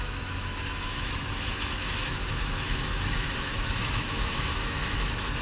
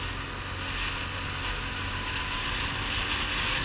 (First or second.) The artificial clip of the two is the first